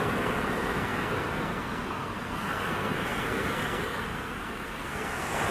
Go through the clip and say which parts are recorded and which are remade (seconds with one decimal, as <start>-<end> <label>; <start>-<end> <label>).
0.0-5.5 remade